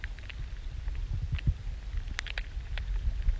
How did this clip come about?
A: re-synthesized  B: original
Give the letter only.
B